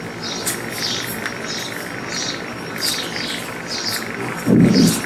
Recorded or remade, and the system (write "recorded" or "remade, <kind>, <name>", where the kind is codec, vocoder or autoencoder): remade, vocoder, BigVGAN v2